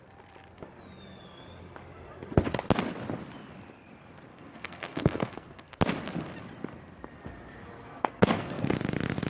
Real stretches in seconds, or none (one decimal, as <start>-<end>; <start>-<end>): 0.0-4.3; 5.7-7.7; 8.7-9.3